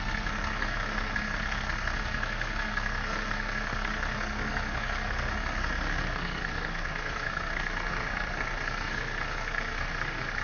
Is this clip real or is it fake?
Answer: fake